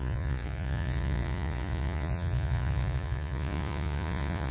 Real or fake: fake